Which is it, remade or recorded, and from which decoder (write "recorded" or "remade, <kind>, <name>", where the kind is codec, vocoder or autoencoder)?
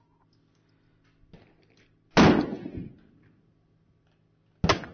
recorded